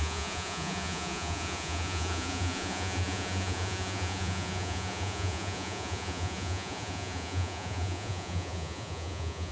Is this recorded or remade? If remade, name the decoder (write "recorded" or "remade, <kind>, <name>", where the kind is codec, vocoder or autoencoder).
remade, vocoder, Vocos